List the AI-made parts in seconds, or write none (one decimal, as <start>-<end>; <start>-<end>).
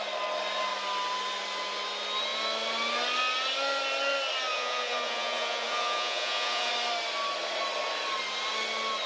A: 4.5-6.7